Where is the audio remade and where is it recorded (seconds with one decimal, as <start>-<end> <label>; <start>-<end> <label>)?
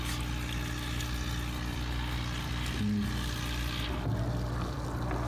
0.0-1.7 recorded; 1.7-3.6 remade; 3.6-5.3 recorded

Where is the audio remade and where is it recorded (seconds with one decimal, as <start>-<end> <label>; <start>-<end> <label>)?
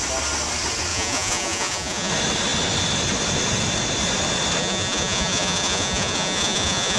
0.0-0.9 recorded; 0.9-2.1 remade; 2.1-4.6 recorded; 4.6-7.0 remade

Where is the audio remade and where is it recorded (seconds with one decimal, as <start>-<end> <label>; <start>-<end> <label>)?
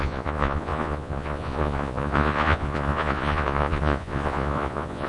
0.0-5.1 remade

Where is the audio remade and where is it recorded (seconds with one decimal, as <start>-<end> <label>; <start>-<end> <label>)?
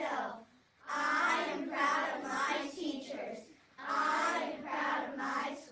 0.0-2.0 recorded; 2.0-5.7 remade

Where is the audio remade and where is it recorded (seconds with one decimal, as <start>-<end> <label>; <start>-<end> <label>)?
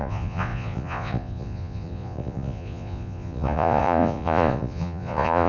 0.0-5.5 remade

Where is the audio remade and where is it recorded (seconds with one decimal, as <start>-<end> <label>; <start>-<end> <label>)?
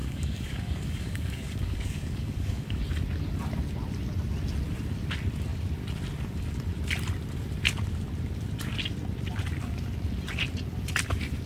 0.0-2.8 remade; 2.8-11.5 recorded